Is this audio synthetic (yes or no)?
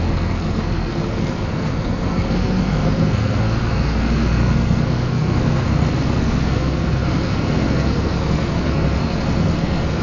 yes